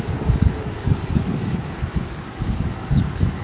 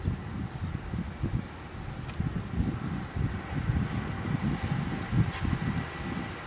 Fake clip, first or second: first